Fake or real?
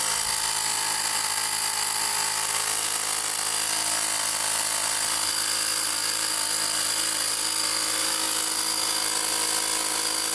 real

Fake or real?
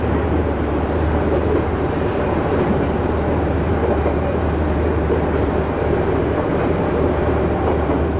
fake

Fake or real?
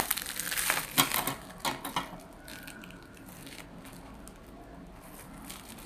real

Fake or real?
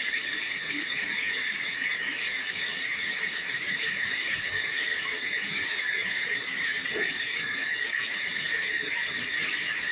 fake